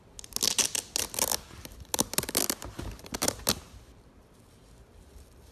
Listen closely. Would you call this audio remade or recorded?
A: recorded